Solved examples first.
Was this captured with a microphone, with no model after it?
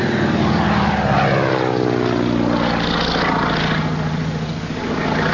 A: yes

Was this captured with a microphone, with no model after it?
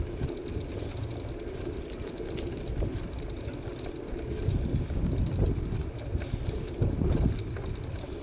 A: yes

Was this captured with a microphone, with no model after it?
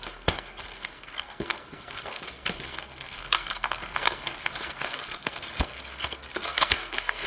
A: no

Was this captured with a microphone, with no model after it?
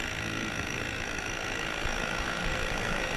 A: no